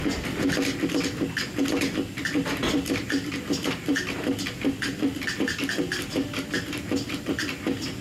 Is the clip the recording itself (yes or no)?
yes